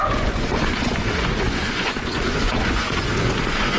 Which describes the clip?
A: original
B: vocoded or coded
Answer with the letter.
B